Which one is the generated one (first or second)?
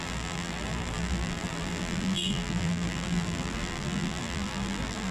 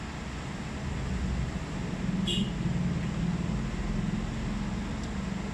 first